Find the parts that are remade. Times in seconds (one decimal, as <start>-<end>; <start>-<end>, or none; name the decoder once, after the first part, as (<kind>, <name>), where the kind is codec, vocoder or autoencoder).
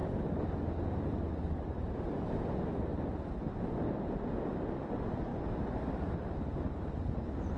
none